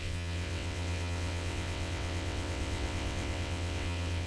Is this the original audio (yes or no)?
no